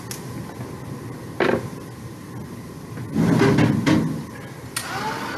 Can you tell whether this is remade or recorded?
recorded